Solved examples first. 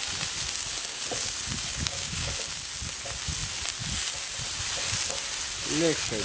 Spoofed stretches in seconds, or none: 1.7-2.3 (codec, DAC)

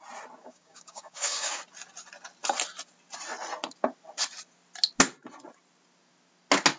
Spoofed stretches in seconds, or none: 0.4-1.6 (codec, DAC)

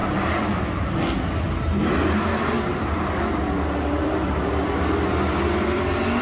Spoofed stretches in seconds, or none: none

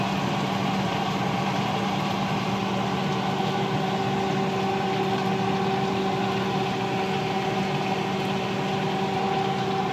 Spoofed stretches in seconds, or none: none

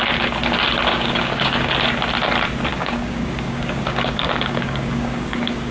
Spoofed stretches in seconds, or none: 0.9-1.7 (codec, DAC); 2.7-5.7

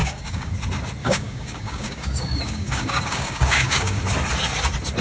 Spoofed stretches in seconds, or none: 0.0-0.5 (codec, DAC); 1.0-4.0